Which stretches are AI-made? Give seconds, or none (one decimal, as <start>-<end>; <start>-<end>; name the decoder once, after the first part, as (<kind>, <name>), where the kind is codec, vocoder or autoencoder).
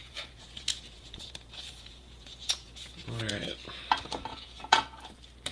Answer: 0.0-3.3 (vocoder, Vocos); 4.3-5.0